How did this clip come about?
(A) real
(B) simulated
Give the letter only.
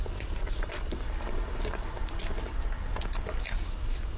A